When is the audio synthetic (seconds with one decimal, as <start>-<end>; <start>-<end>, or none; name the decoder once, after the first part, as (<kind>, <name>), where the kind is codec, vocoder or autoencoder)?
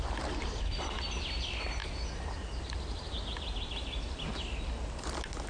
none